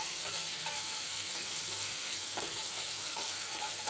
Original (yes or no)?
no